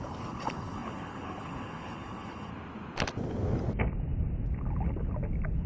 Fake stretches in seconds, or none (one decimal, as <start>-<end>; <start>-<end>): 0.0-2.5